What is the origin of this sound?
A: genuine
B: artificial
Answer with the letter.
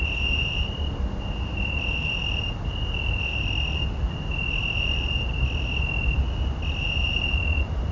A